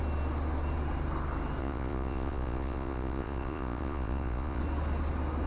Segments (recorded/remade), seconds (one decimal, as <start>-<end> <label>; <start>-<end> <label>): 0.0-1.6 recorded; 1.6-4.6 remade; 4.6-5.5 recorded